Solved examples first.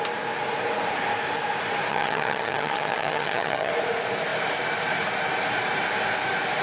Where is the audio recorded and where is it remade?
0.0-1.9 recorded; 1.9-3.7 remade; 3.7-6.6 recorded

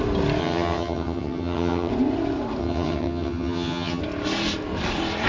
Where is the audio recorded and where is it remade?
0.0-0.4 recorded; 0.4-1.9 remade; 1.9-2.6 recorded; 2.6-4.0 remade; 4.0-5.3 recorded

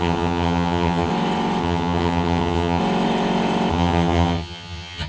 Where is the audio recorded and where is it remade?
0.0-1.1 remade; 1.1-1.6 recorded; 1.6-2.8 remade; 2.8-3.7 recorded; 3.7-5.1 remade

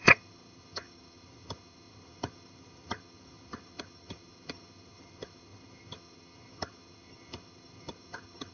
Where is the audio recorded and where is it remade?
0.0-8.5 remade